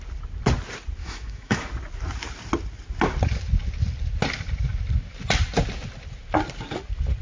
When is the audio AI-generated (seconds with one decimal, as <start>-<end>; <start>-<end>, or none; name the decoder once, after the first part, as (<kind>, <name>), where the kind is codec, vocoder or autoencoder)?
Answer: 1.0-1.7 (autoencoder, DAC-VAE)